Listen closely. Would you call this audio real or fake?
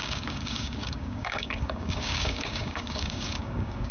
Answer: fake